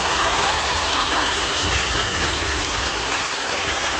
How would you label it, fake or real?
fake